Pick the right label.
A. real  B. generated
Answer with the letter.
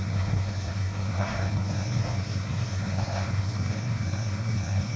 B